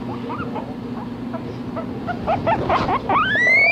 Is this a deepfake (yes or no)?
no